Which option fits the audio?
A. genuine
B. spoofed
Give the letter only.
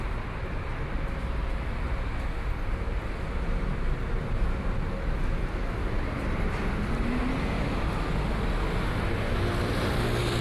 A